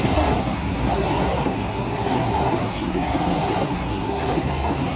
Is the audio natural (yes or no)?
no